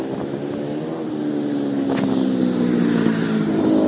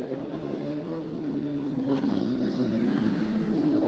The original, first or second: first